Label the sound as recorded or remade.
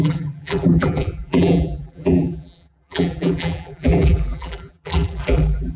remade